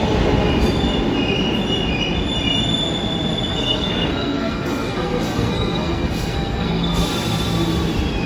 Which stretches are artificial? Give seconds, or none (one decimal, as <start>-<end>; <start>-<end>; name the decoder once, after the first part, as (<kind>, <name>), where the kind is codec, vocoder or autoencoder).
3.5-7.0 (codec, SNAC)